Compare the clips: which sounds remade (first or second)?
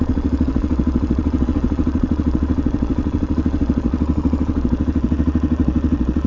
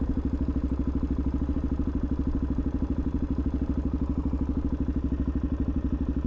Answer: first